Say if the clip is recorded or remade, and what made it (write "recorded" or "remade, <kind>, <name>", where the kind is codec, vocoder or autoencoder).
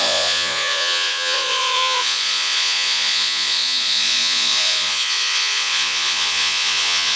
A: remade, vocoder, Vocos